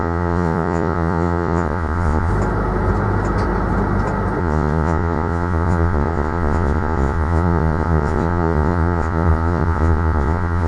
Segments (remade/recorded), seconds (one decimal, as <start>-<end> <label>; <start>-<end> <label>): 0.0-2.3 remade; 2.3-4.4 recorded; 4.4-10.7 remade